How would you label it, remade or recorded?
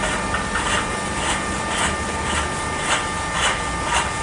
recorded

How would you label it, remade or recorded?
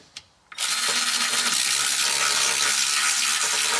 recorded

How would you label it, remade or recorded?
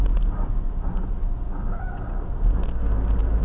recorded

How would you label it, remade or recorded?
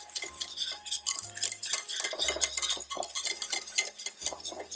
recorded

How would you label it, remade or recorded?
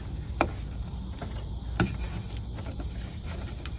recorded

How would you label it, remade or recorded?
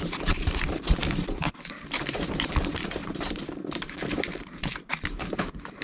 remade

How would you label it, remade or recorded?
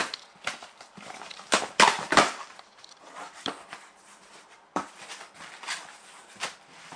remade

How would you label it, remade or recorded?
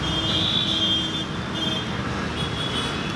recorded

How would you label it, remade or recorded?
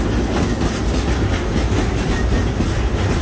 recorded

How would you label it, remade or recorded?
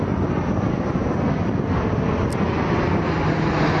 recorded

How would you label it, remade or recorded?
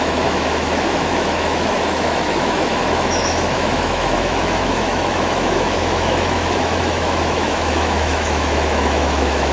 remade